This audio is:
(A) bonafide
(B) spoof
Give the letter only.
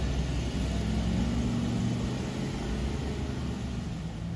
A